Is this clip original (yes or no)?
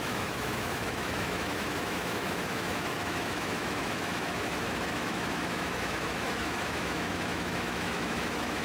no